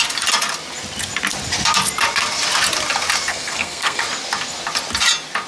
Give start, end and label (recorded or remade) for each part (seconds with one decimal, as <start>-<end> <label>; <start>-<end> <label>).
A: 0.0-3.3 recorded; 3.3-4.0 remade; 4.0-5.5 recorded